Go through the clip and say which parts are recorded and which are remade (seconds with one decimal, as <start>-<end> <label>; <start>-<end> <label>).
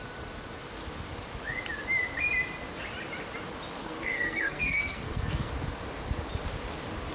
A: 0.0-3.8 recorded; 3.8-5.5 remade; 5.5-7.1 recorded